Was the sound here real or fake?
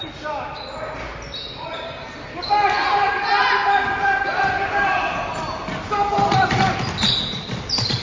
real